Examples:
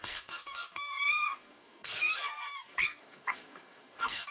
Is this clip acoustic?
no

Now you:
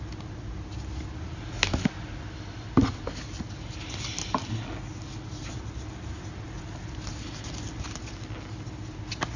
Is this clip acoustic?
yes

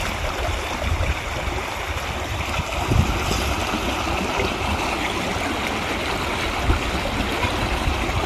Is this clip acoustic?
no